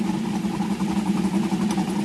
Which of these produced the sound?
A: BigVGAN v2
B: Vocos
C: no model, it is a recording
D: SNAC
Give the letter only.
C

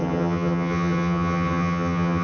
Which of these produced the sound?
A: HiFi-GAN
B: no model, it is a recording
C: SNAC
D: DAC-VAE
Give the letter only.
A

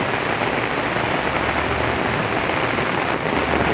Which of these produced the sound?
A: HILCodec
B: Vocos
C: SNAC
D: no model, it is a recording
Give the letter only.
D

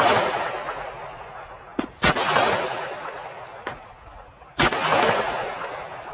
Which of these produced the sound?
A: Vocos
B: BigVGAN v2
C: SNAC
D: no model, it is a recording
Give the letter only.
A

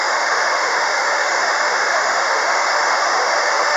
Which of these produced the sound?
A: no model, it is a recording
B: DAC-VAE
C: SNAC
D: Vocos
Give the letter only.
B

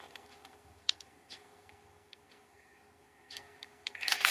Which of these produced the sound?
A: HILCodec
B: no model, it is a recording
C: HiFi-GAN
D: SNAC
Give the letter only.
D